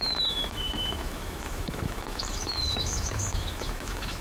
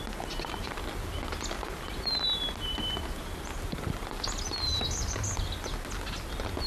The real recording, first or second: second